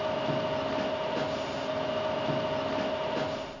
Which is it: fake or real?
real